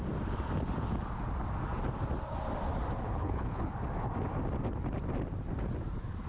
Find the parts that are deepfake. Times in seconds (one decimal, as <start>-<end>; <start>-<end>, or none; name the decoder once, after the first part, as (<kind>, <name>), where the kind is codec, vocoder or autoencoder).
3.0-3.7 (codec, HILCodec)